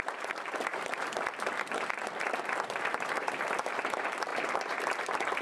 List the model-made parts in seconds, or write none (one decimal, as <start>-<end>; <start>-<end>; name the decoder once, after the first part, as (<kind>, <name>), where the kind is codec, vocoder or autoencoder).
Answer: 0.7-3.4 (vocoder, BigVGAN v2)